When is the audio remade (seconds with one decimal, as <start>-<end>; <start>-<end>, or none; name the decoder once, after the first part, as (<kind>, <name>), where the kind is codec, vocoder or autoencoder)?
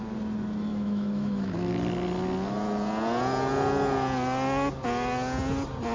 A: 0.7-1.7 (autoencoder, DAC-VAE)